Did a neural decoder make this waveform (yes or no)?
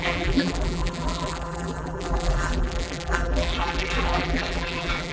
yes